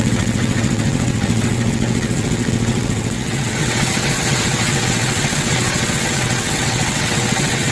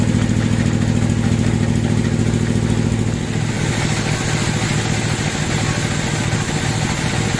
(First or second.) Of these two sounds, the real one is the second